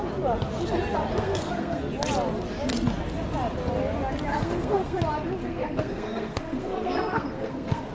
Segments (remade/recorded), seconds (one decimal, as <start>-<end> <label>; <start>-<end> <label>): 0.0-1.1 recorded; 1.1-1.8 remade; 1.8-4.3 recorded; 4.3-5.0 remade; 5.0-5.4 recorded; 5.4-7.9 remade